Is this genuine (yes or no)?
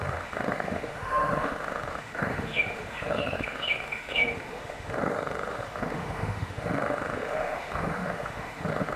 no